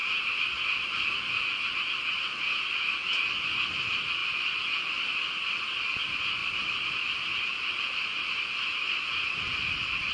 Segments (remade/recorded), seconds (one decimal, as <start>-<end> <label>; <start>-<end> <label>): 0.0-1.8 remade; 1.8-4.2 recorded; 4.2-5.2 remade; 5.2-6.4 recorded; 6.4-10.1 remade